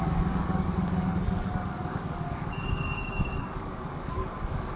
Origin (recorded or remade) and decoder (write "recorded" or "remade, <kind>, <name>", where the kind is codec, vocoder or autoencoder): remade, codec, DAC